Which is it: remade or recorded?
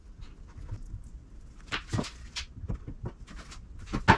recorded